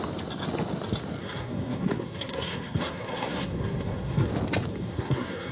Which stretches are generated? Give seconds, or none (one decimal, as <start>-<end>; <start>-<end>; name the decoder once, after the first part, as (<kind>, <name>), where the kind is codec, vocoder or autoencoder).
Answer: 1.2-4.3 (codec, SNAC); 4.7-5.5